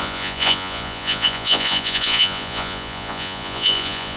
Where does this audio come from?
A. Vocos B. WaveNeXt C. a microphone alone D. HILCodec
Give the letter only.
A